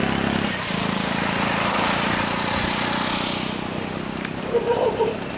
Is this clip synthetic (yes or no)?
no